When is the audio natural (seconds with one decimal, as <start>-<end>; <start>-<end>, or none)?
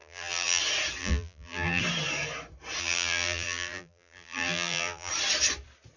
0.6-1.0; 1.8-2.8; 5.1-6.0